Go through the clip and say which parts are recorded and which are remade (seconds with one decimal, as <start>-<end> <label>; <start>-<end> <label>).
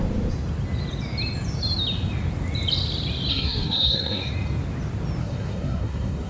0.0-3.3 recorded; 3.3-4.3 remade; 4.3-5.2 recorded; 5.2-6.3 remade